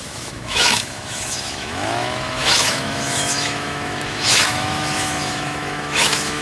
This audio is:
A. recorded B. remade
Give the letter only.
B